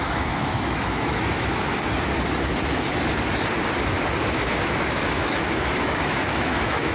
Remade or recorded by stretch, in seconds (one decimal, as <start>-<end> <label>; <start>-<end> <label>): 0.0-1.5 remade; 1.5-4.6 recorded; 4.6-6.9 remade